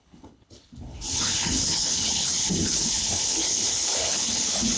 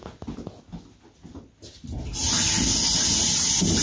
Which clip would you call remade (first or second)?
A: first